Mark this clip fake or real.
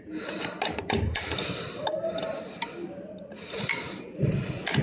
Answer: real